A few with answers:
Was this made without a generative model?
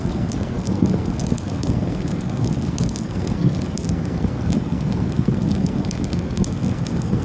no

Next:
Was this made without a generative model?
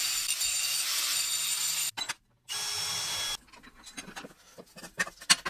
yes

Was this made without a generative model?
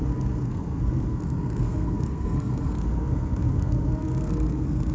no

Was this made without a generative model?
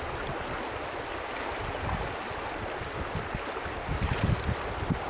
yes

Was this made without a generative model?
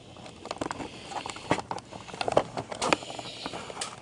yes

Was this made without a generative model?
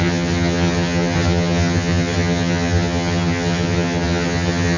no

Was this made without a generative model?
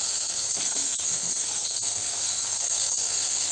no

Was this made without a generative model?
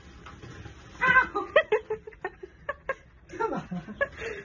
yes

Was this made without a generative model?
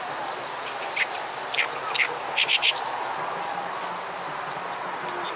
yes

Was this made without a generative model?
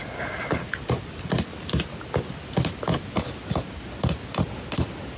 yes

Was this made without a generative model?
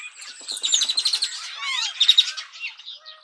yes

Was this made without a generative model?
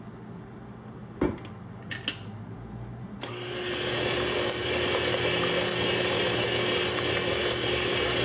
yes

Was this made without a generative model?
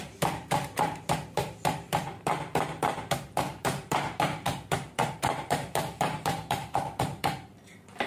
no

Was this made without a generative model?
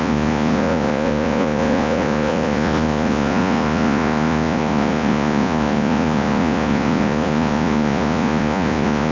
no